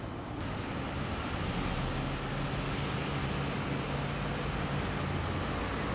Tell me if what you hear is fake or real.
real